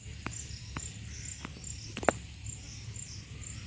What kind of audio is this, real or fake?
real